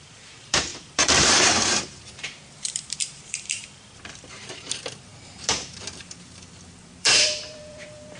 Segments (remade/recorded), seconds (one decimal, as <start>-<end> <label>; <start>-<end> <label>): 0.0-8.2 remade